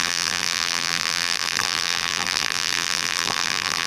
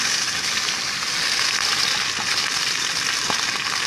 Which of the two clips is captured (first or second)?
second